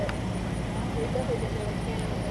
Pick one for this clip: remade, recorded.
recorded